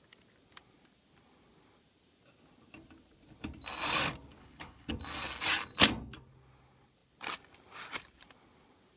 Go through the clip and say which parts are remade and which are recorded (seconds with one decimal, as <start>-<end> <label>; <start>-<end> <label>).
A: 0.0-4.4 recorded; 4.4-4.9 remade; 4.9-9.0 recorded